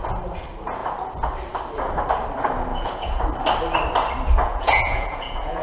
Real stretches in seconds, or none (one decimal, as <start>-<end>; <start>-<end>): 0.0-2.7; 3.2-4.5